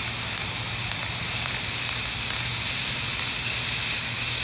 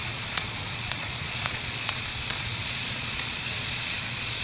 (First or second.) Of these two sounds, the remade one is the second